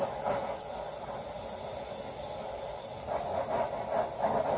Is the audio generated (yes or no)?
no